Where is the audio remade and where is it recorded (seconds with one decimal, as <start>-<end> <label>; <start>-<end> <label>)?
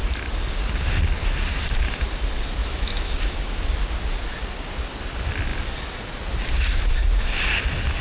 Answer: 0.0-2.6 recorded; 2.6-3.1 remade; 3.1-8.0 recorded